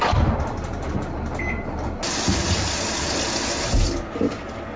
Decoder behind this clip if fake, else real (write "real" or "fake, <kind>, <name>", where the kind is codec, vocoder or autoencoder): real